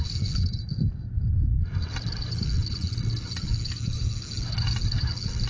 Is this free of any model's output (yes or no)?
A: yes